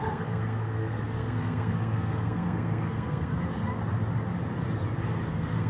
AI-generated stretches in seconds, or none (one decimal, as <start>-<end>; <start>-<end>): 0.0-3.3; 5.3-5.7